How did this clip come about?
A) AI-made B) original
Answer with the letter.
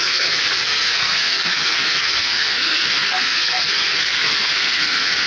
A